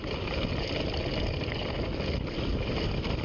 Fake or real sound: real